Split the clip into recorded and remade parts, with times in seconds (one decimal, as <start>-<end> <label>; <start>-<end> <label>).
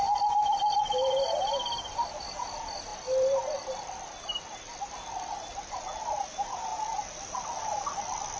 0.0-8.4 recorded